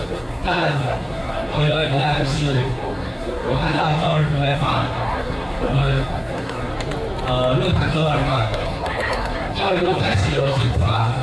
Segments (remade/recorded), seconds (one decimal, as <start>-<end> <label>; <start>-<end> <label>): 0.0-6.7 remade; 6.7-7.8 recorded; 7.8-11.2 remade